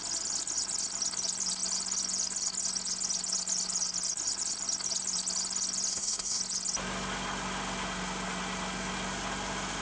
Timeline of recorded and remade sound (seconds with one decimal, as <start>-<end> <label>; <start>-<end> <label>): 0.0-5.9 recorded; 5.9-6.4 remade; 6.4-9.8 recorded